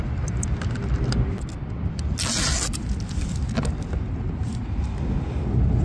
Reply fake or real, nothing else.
real